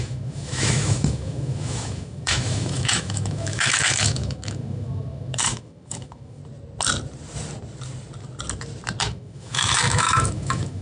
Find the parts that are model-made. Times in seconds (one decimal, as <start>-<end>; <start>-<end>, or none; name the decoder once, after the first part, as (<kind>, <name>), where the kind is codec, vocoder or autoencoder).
0.0-6.4 (autoencoder, DAC-VAE); 9.0-10.8